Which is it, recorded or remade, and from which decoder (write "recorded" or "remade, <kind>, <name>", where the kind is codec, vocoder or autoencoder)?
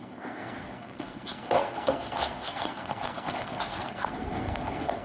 remade, codec, SNAC